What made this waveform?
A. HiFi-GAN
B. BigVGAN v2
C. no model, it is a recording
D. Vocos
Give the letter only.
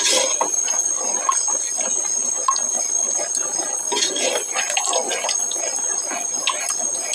C